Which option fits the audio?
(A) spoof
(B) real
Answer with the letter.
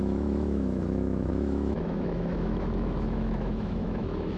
A